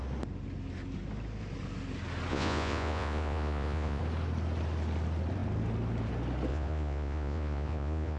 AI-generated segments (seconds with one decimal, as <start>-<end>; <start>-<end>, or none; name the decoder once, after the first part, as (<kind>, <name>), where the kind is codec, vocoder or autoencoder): 2.3-4.0 (vocoder, Vocos); 6.5-8.2